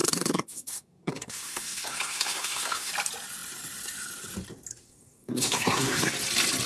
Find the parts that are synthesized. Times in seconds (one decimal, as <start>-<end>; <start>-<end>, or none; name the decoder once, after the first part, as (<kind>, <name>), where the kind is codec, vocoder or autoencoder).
0.0-2.9 (codec, SNAC); 4.7-6.1

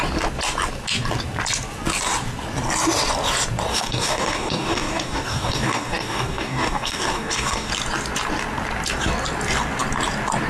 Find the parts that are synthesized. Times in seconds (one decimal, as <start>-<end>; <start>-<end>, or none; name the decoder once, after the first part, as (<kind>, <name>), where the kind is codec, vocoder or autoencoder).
3.7-7.7 (codec, DAC)

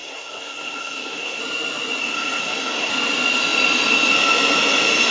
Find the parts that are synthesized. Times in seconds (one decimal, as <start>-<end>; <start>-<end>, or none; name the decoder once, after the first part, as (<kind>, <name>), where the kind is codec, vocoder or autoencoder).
0.0-1.4 (codec, SNAC); 2.0-2.9

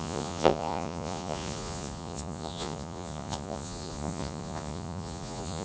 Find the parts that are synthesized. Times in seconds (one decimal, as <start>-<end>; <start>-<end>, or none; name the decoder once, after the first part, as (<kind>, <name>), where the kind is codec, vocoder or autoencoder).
0.0-5.6 (vocoder, Vocos)